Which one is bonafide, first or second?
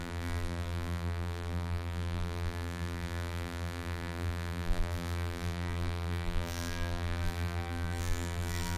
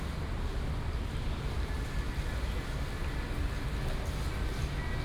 second